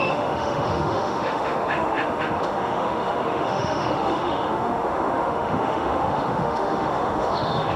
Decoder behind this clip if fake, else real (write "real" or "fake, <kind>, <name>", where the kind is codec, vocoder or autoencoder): fake, autoencoder, DAC-VAE